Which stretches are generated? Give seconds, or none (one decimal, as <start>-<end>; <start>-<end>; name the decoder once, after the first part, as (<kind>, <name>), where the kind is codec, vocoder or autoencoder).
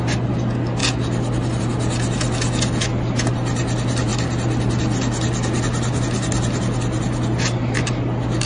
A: none